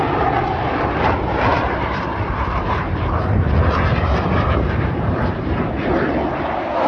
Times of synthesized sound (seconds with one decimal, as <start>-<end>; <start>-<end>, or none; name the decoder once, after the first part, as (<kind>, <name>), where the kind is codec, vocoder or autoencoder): 1.5-5.6 (vocoder, BigVGAN v2)